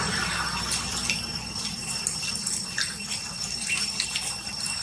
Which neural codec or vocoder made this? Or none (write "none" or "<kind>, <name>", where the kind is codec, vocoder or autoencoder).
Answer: none